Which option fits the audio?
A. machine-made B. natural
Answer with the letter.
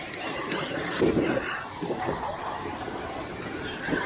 A